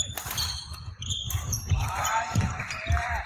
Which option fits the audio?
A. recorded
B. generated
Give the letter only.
B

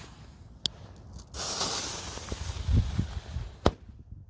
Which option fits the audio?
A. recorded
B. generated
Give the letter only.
A